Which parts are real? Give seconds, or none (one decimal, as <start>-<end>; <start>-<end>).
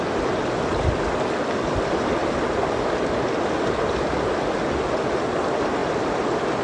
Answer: 0.0-6.6